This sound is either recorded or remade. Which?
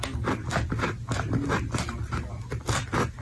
recorded